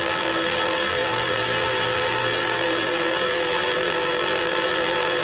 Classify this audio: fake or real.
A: fake